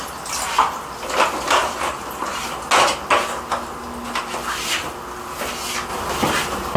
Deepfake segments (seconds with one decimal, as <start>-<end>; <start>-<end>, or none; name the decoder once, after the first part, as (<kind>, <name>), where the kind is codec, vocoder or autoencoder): 5.9-6.8 (vocoder, BigVGAN v2)

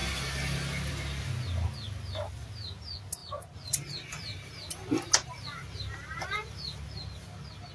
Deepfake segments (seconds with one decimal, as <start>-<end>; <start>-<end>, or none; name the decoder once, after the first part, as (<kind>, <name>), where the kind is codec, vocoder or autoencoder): none

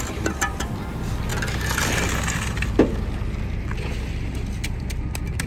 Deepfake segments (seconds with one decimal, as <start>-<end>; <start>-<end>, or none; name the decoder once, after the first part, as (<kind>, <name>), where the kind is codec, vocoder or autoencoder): 0.0-1.3 (vocoder, BigVGAN v2); 4.6-5.5

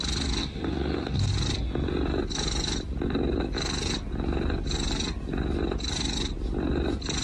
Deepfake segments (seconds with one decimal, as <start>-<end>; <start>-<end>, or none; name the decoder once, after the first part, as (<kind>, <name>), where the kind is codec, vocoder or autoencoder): 0.4-1.3 (autoencoder, DAC-VAE)

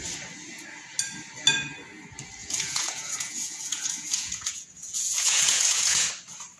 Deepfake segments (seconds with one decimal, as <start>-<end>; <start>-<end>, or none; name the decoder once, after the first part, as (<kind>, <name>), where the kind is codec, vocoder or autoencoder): 2.4-6.1 (vocoder, Vocos)

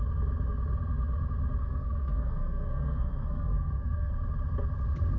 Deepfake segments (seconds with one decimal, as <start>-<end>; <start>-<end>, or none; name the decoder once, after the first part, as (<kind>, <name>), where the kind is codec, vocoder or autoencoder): 1.6-4.1 (codec, SNAC)

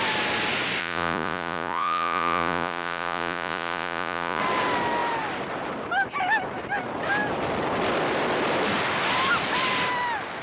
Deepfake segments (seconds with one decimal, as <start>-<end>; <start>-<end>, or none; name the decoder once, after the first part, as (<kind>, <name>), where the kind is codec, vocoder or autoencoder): 0.8-4.4 (vocoder, Vocos)

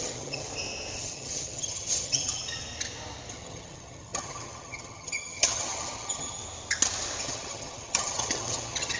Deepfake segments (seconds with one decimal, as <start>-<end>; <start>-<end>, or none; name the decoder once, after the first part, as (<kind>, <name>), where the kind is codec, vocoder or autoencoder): 0.0-0.5 (vocoder, HiFi-GAN); 1.0-2.4; 3.3-6.4; 7.2-9.0